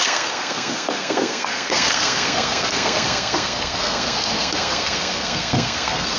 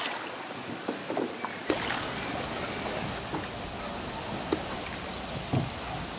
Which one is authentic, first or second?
second